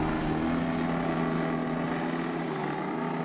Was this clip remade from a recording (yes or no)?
no